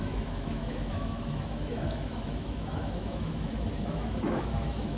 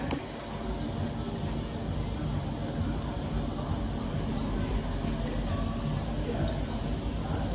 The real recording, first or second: second